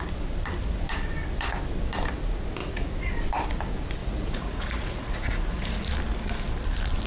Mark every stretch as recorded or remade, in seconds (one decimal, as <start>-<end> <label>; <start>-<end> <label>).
0.0-2.6 recorded; 2.6-3.1 remade; 3.1-4.0 recorded; 4.0-5.9 remade; 5.9-7.1 recorded